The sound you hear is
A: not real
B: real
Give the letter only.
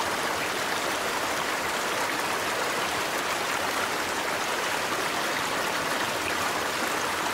B